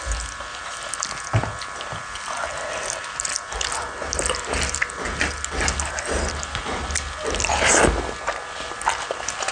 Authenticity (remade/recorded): recorded